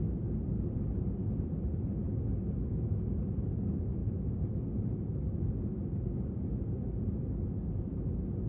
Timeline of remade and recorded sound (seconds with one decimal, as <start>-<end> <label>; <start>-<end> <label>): 0.0-8.5 recorded